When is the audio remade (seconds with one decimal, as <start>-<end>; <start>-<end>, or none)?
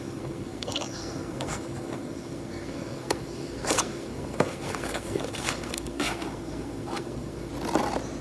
0.0-7.5